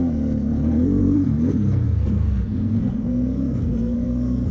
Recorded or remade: remade